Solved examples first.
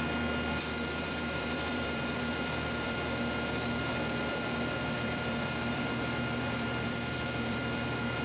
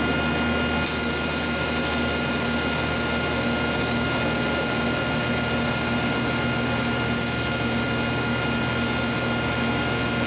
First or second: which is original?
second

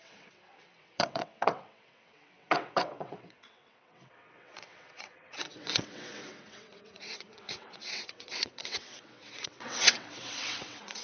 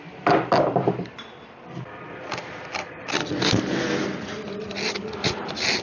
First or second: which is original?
second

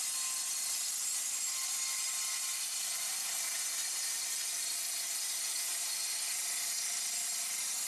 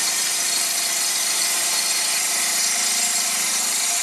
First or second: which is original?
first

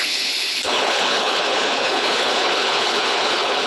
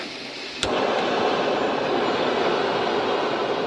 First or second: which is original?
second